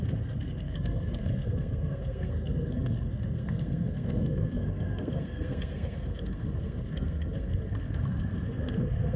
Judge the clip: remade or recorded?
remade